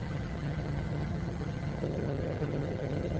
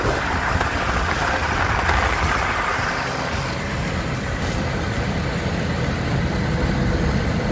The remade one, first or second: first